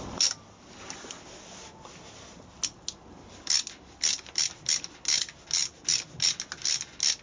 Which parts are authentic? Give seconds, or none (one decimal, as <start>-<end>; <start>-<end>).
0.0-7.2